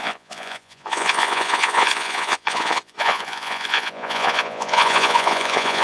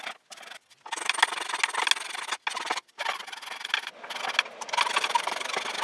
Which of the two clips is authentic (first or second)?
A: second